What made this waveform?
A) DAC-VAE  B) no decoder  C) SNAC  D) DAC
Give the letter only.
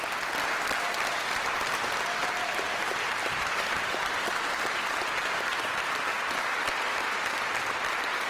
B